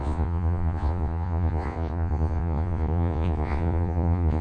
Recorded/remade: remade